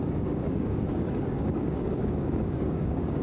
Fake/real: fake